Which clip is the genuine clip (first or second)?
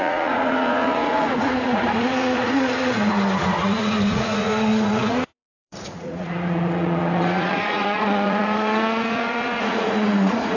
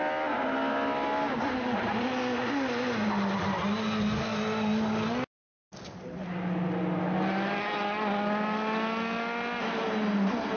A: second